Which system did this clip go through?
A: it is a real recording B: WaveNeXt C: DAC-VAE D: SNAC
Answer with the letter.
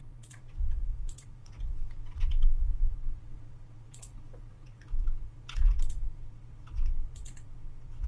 B